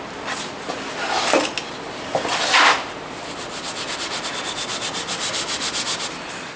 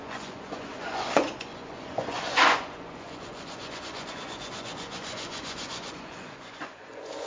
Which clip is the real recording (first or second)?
first